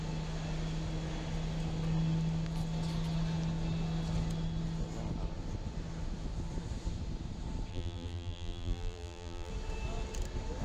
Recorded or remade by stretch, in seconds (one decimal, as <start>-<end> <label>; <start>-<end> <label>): 0.0-7.7 recorded; 7.7-9.5 remade; 9.5-10.6 recorded